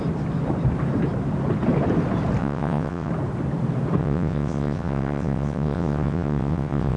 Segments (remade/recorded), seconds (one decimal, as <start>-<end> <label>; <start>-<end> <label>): 0.0-2.4 recorded; 2.4-3.1 remade; 3.1-4.0 recorded; 4.0-7.0 remade